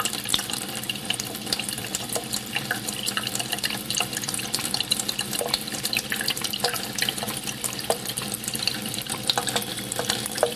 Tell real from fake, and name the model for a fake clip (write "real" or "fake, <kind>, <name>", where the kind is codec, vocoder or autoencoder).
fake, vocoder, BigVGAN v2